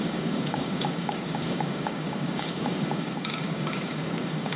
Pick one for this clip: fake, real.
fake